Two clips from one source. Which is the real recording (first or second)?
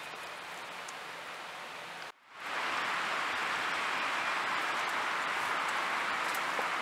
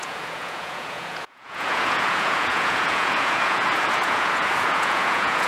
first